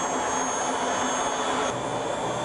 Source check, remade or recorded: recorded